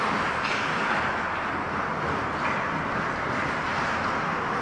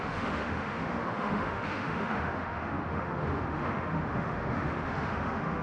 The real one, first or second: first